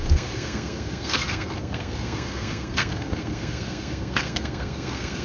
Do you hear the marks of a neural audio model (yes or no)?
yes